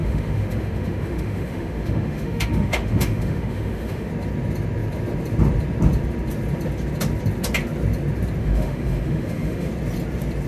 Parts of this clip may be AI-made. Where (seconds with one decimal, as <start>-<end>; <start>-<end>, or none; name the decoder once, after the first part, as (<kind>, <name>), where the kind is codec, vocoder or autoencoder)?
0.0-4.1 (autoencoder, DAC-VAE); 8.4-9.7